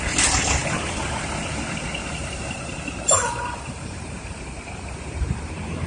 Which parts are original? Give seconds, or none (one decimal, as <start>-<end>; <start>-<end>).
0.0-2.0; 5.5-5.9